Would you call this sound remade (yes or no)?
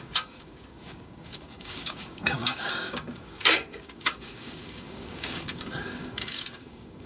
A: yes